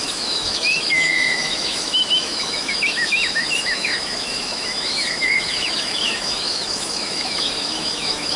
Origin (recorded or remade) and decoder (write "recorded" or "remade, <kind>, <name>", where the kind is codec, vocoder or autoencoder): remade, autoencoder, DAC-VAE